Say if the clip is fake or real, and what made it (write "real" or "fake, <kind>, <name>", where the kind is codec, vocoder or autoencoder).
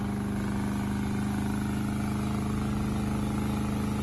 real